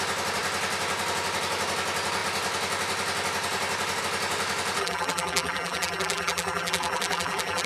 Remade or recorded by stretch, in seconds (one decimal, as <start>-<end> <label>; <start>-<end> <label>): 0.0-4.8 recorded; 4.8-7.7 remade